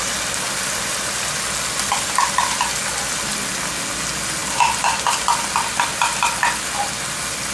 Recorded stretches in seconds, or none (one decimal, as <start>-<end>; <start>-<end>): 0.0-7.5